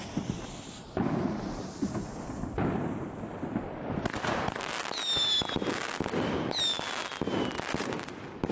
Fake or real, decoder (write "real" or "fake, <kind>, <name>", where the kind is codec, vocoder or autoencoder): real